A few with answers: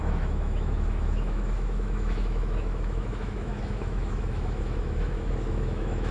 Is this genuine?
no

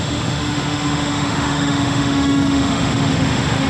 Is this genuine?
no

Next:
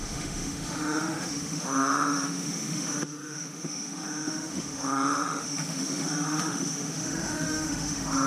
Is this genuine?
no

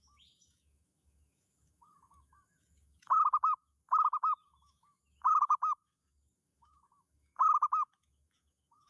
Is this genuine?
no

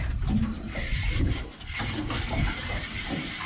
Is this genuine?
yes